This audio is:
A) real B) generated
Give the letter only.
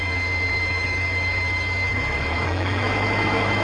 B